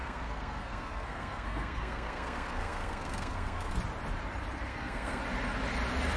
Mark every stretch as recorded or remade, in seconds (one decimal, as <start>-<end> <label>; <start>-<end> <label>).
0.0-3.7 remade; 3.7-4.7 recorded; 4.7-5.2 remade; 5.2-6.2 recorded